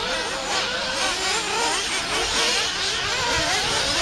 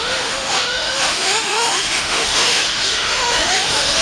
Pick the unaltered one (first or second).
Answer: first